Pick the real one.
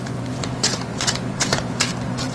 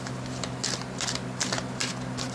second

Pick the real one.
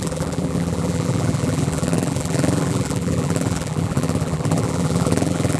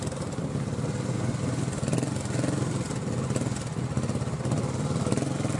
second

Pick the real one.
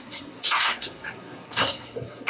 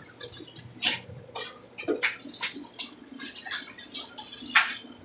second